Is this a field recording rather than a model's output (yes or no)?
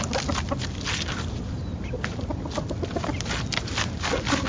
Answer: yes